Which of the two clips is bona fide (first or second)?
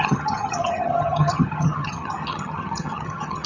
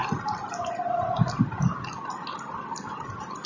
second